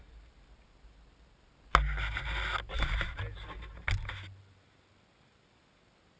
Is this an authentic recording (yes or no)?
yes